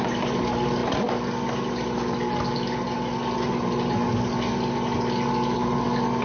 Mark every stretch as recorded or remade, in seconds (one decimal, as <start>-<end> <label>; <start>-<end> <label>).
0.0-6.2 recorded